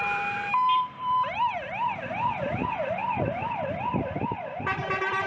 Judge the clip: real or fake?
fake